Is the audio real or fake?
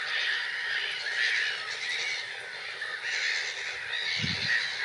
real